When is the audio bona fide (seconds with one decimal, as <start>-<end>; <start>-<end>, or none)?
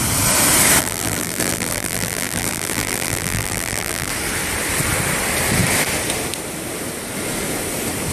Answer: 0.0-0.8; 4.1-8.1